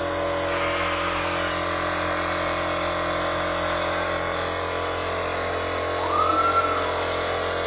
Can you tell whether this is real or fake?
real